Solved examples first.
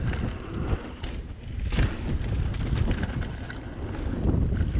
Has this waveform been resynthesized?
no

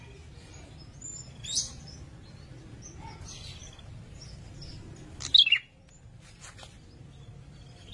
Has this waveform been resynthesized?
no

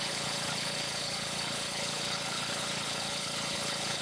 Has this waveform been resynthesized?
yes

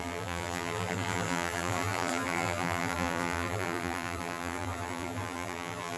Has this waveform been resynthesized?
yes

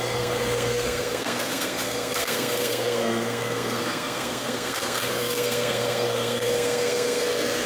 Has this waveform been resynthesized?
yes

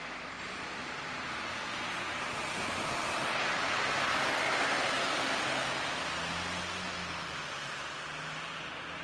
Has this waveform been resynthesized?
no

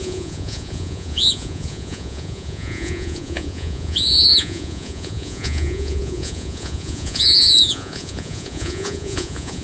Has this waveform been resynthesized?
yes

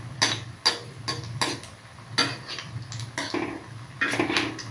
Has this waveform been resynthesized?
no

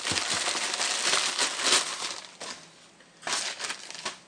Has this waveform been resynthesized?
no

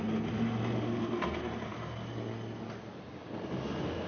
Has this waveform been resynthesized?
no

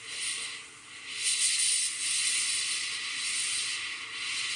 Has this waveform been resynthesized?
no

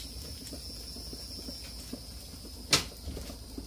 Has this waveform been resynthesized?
no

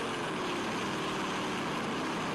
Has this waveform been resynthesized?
no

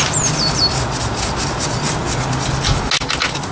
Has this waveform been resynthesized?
no